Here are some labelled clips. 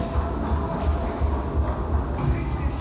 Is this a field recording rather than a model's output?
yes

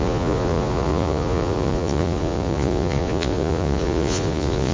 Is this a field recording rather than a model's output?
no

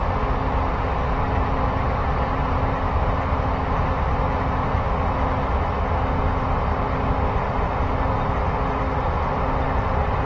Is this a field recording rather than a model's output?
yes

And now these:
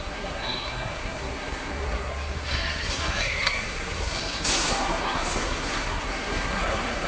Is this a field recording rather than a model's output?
no